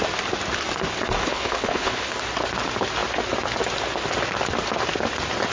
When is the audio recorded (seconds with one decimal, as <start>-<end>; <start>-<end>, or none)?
0.0-1.2; 2.2-5.5